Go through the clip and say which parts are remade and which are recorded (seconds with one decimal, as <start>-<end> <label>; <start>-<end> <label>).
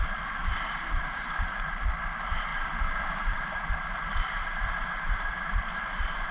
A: 0.0-0.4 recorded; 0.4-1.5 remade; 1.5-2.5 recorded; 2.5-3.7 remade; 3.7-4.4 recorded; 4.4-5.8 remade; 5.8-6.3 recorded